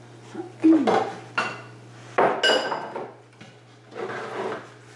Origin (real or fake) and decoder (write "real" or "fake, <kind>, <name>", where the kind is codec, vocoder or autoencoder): real